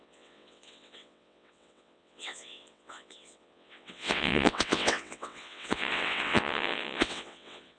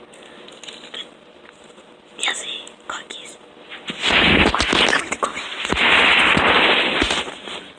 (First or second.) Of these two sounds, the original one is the second